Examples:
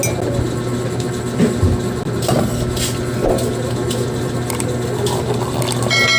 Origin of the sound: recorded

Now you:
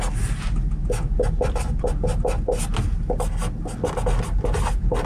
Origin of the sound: recorded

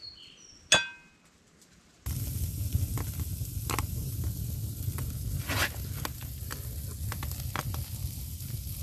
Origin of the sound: recorded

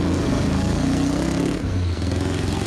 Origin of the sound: remade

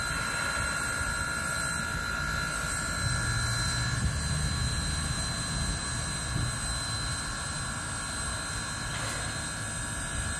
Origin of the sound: recorded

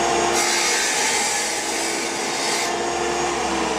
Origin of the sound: recorded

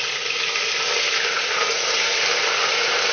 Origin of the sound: recorded